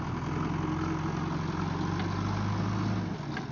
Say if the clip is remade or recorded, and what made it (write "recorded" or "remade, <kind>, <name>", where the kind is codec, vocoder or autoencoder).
recorded